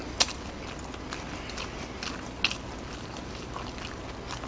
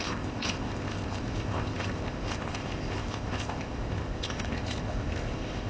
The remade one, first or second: second